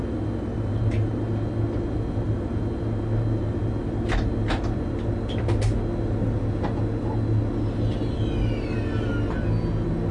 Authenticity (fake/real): real